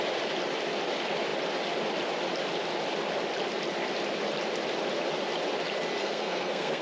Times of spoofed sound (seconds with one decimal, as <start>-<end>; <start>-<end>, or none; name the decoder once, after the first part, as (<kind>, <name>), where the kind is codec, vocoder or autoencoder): 6.0-6.8 (codec, SNAC)